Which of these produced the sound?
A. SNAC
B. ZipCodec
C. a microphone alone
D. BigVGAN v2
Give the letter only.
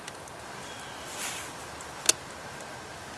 C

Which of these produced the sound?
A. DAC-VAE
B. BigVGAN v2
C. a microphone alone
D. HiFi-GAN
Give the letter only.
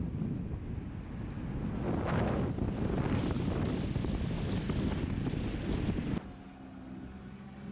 C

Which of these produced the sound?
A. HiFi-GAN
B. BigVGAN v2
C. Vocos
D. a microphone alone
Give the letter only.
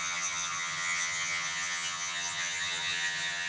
A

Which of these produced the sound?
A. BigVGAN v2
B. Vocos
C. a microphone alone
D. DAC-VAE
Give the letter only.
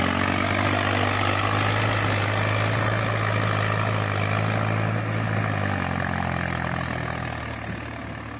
C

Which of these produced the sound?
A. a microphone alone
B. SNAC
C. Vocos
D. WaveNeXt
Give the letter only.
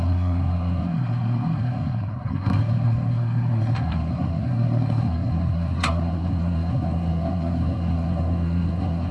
B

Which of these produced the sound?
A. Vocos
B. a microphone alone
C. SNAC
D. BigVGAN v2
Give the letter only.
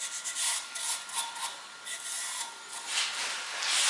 B